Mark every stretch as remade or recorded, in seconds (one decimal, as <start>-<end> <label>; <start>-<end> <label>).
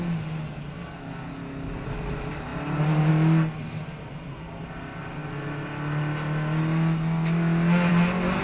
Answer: 0.0-8.4 recorded